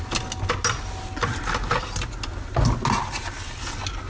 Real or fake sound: real